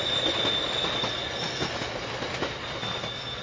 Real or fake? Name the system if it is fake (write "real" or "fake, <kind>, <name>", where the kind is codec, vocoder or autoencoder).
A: real